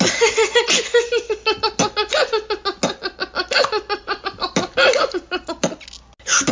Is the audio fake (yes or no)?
no